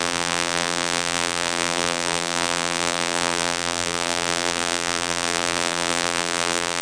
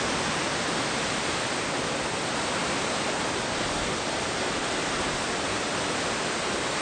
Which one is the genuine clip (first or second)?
second